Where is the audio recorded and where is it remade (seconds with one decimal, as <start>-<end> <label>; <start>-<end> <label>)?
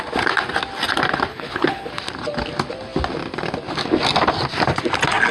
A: 0.0-1.3 recorded; 1.3-1.9 remade; 1.9-5.3 recorded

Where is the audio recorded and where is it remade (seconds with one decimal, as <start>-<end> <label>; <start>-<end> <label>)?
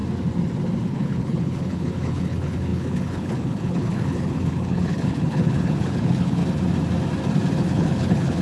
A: 0.0-0.8 recorded; 0.8-6.4 remade; 6.4-7.6 recorded; 7.6-8.4 remade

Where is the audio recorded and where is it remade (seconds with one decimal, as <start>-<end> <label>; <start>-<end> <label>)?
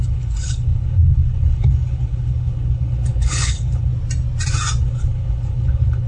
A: 0.0-3.9 remade; 3.9-4.8 recorded; 4.8-6.1 remade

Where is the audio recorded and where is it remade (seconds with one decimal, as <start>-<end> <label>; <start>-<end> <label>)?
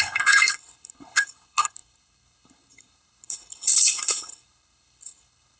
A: 0.0-5.6 remade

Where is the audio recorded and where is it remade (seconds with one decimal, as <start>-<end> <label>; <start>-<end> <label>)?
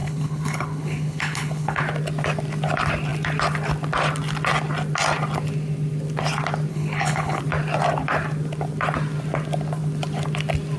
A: 0.0-1.8 remade; 1.8-6.7 recorded; 6.7-7.4 remade; 7.4-10.8 recorded